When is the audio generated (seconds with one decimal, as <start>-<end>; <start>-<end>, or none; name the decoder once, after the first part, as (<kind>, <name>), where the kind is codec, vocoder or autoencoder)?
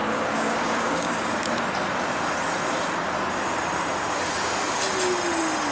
0.0-1.3 (codec, DAC)